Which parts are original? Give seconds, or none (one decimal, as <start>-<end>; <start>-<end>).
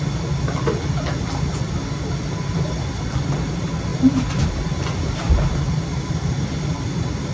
0.0-7.3